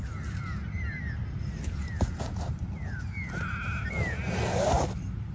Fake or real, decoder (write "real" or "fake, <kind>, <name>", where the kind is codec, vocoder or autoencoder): real